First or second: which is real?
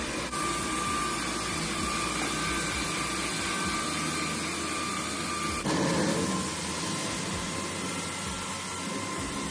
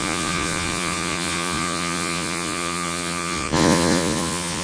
first